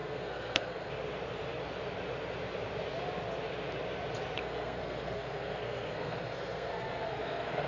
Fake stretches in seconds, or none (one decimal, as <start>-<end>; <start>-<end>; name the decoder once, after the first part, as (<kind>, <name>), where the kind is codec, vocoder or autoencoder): 0.0-0.9 (codec, SNAC); 4.4-7.7